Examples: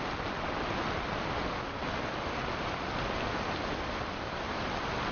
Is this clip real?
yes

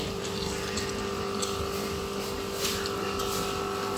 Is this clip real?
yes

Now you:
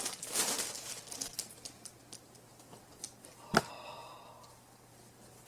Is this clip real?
yes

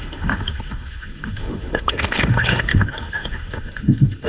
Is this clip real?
no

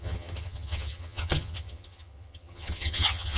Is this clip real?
no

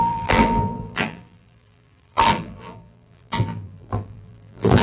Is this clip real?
no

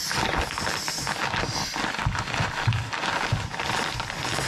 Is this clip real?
yes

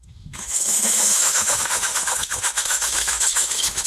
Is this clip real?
no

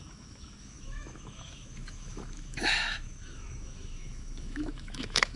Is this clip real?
no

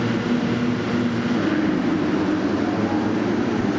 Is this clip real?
yes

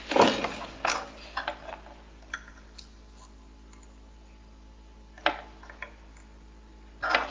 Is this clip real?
yes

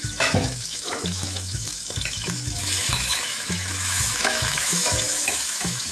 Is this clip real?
no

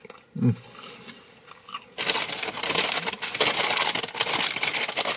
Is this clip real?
yes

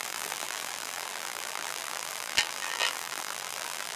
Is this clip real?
no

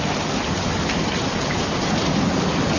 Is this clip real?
yes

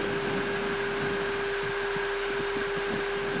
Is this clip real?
yes